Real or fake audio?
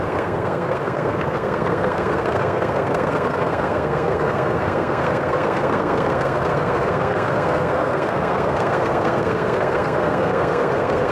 fake